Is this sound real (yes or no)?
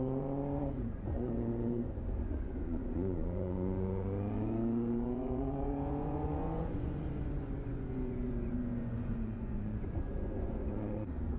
no